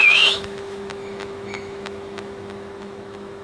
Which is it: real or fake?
fake